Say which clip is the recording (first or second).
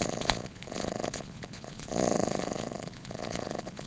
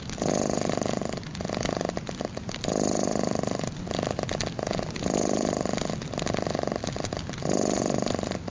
second